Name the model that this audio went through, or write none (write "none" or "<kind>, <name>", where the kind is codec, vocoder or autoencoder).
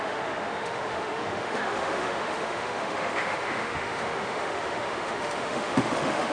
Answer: autoencoder, DAC-VAE